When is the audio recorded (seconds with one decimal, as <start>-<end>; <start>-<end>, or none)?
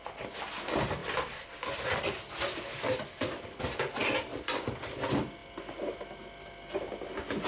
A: 0.0-7.5